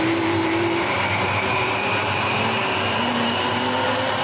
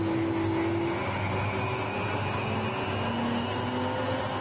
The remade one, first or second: first